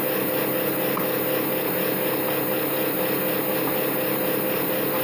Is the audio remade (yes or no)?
no